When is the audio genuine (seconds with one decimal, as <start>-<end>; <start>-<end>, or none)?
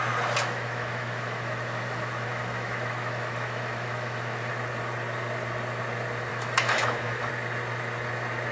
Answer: 0.0-0.4; 4.5-6.3; 7.3-8.5